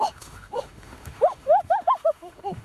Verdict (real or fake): fake